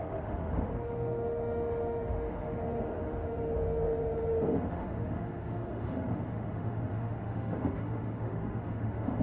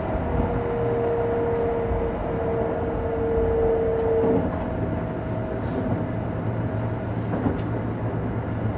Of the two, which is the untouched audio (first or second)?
second